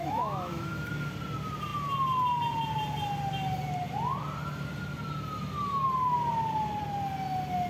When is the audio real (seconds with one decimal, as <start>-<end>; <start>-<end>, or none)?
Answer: 0.9-7.7